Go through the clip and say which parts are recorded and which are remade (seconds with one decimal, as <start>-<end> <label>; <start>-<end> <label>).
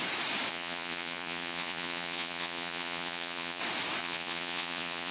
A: 0.0-0.5 recorded; 0.5-3.6 remade; 3.6-4.0 recorded; 4.0-5.1 remade